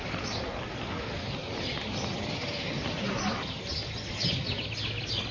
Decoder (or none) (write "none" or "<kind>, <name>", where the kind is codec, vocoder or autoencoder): none